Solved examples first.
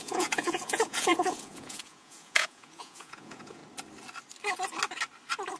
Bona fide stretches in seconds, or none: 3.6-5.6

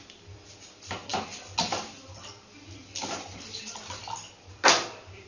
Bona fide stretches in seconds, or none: 0.0-5.3

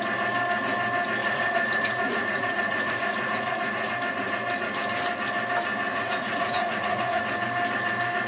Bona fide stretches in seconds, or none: 0.0-1.2; 3.9-5.9; 7.2-8.3

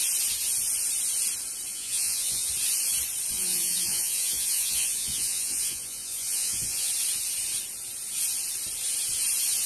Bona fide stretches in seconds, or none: 0.0-1.7; 2.5-3.3; 6.9-9.7

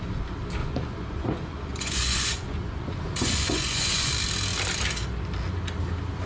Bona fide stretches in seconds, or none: 0.0-0.6; 4.1-6.3

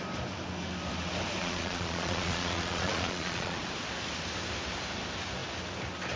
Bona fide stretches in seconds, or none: 0.0-1.4; 3.6-6.2

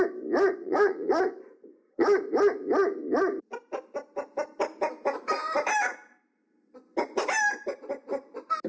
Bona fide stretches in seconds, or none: 0.0-0.6; 1.1-8.7

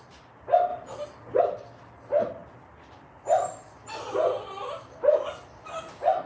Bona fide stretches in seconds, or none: 0.0-6.3